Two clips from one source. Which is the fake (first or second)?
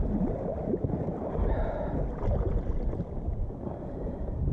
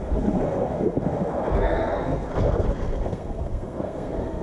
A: second